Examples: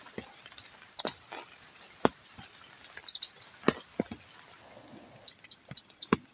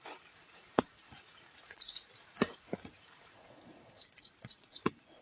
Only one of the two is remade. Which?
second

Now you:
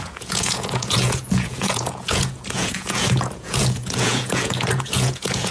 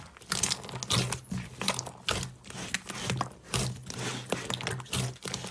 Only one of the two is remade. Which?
first